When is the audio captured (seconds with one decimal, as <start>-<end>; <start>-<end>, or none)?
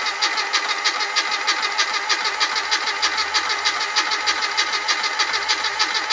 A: 0.0-6.1